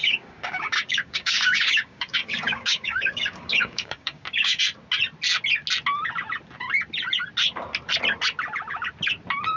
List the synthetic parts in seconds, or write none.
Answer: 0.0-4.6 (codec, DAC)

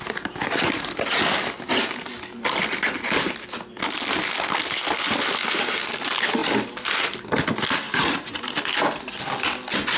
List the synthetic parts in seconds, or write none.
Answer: none

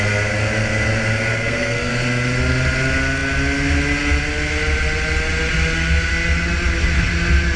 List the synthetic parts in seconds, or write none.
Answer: 1.3-1.9 (codec, SNAC)

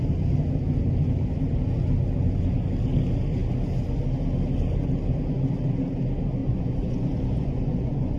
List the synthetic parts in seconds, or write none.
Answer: 6.4-8.2 (vocoder, Vocos)

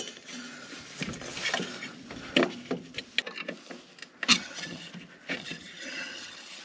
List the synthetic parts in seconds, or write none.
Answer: 4.3-4.9 (vocoder, HiFi-GAN); 5.4-6.6

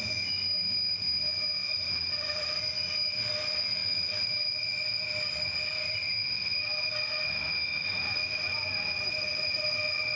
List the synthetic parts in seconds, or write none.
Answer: 1.6-2.6 (vocoder, Vocos)

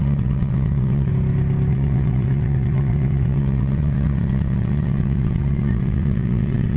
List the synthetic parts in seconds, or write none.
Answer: 0.0-1.1 (vocoder, WaveNeXt); 1.7-6.8

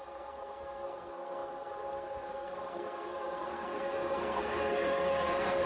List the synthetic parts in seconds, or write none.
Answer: 0.0-5.7 (codec, SNAC)